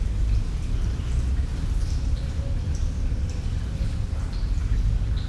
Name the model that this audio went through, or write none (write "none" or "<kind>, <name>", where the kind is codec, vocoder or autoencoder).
none